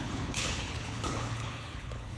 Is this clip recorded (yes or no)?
no